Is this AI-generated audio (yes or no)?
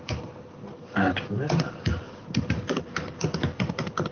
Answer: yes